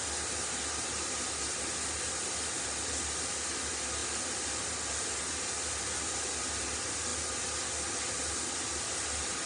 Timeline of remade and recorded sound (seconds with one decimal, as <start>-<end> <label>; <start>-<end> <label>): 0.0-9.5 recorded